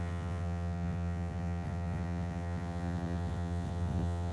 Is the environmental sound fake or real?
fake